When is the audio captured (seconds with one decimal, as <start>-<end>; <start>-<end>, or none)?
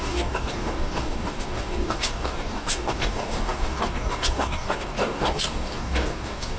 none